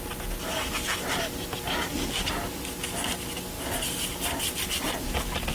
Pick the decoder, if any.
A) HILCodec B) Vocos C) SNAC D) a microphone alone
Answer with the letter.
D